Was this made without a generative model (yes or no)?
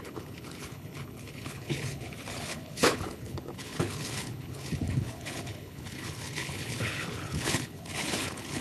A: no